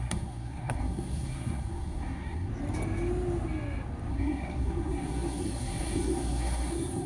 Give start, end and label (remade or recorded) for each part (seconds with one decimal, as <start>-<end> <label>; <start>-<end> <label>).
0.0-2.5 remade; 2.5-4.1 recorded; 4.1-7.1 remade